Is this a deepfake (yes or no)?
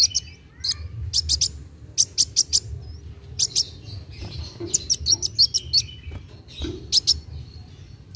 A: no